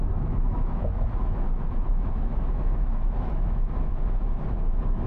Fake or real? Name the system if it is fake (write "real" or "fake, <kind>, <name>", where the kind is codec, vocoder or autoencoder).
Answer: fake, autoencoder, DAC-VAE